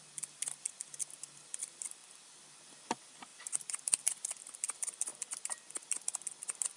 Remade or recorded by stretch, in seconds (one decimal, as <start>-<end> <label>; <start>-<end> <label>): 0.0-2.0 recorded; 2.0-2.6 remade; 2.6-5.1 recorded; 5.1-6.8 remade